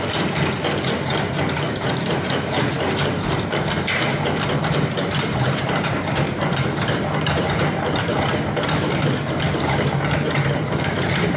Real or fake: fake